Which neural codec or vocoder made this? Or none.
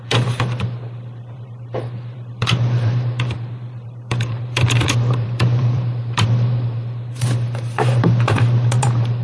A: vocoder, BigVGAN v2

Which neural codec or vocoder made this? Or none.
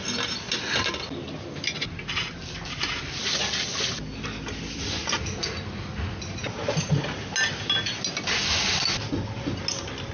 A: none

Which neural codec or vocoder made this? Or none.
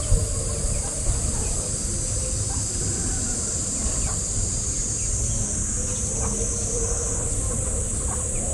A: none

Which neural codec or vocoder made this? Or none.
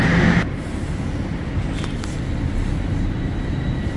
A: none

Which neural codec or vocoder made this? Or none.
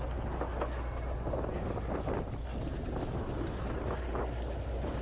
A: none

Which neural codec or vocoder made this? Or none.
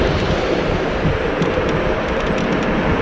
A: vocoder, BigVGAN v2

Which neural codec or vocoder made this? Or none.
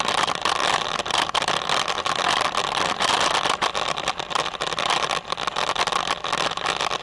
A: vocoder, BigVGAN v2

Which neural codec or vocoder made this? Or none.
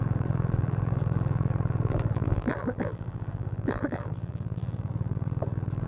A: vocoder, BigVGAN v2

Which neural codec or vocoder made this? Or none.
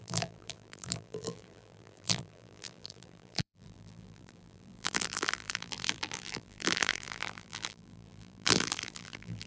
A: vocoder, BigVGAN v2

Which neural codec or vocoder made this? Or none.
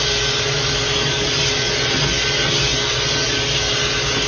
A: none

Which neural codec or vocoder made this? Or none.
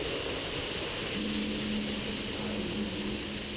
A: none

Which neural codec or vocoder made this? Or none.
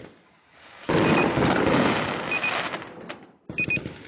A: none